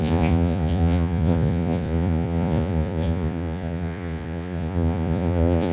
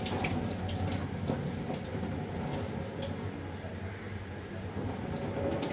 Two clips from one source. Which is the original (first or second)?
second